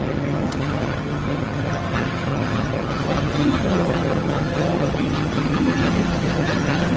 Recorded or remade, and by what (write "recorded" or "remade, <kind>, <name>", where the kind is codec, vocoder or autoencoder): remade, vocoder, HiFi-GAN